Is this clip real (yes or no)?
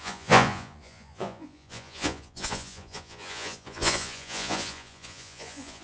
no